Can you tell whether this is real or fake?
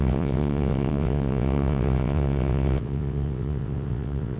fake